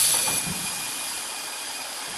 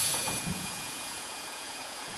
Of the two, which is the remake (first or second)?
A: second